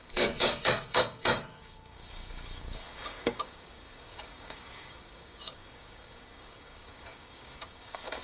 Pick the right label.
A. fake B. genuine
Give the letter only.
A